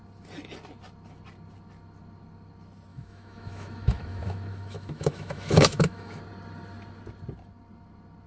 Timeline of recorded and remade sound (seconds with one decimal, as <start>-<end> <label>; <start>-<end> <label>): 0.0-2.9 recorded; 2.9-6.2 remade; 6.2-8.3 recorded

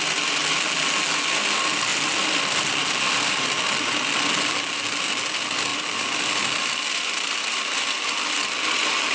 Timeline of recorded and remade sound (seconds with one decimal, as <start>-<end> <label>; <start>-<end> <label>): 0.0-1.9 recorded; 1.9-3.2 remade; 3.2-5.7 recorded; 5.7-8.5 remade; 8.5-9.1 recorded